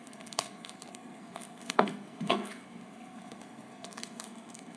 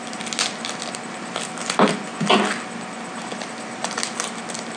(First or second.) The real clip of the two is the second